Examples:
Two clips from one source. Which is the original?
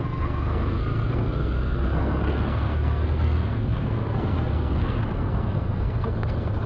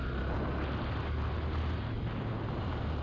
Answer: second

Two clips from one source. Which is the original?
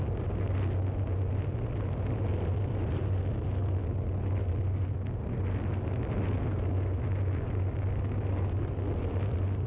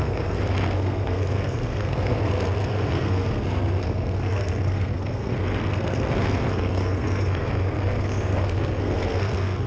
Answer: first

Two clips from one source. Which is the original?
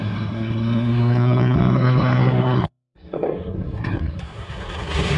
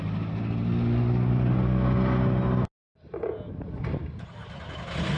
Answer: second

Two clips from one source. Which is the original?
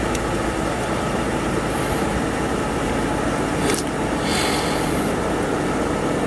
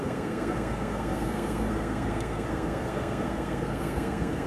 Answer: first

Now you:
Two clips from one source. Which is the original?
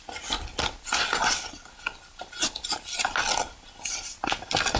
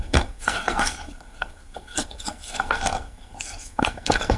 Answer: first